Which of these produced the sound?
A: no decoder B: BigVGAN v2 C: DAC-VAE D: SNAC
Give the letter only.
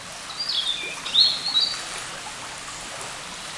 A